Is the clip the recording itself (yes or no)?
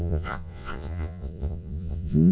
no